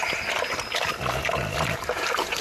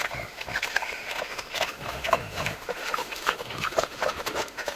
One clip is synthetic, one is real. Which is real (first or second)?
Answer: first